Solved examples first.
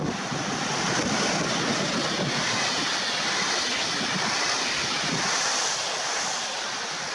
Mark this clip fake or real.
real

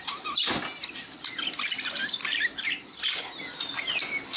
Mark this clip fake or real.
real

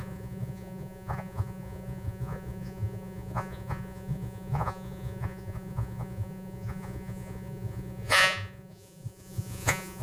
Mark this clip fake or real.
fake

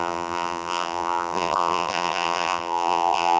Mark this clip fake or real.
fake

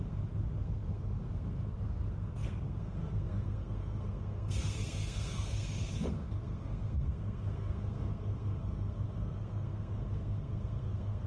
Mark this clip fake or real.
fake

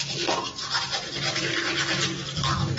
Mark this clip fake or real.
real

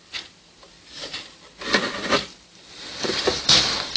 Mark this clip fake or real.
fake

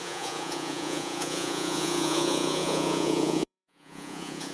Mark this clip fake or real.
fake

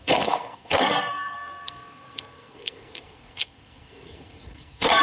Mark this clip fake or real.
fake